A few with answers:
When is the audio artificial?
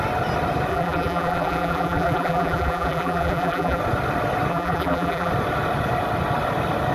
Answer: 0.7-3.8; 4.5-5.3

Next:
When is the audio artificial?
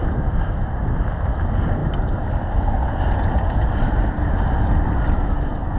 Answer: none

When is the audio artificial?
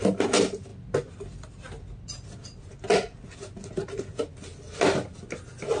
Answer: 4.5-5.2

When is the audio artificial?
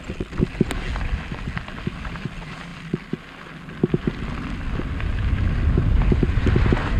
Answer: none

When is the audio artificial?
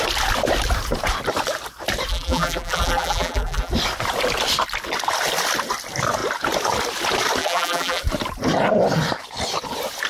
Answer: 2.1-3.7; 7.4-8.0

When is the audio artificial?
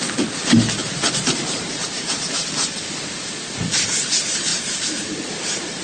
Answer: 0.8-2.5; 4.5-5.3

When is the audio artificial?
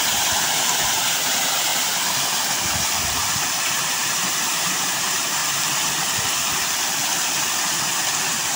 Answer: 0.0-1.7; 3.6-5.4